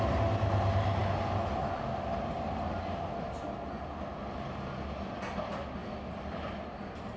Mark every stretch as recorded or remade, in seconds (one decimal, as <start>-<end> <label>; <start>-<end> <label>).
0.0-7.2 recorded